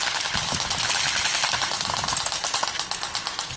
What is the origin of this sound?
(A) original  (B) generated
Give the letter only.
A